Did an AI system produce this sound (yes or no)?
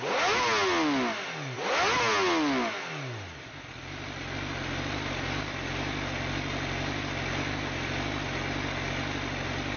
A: no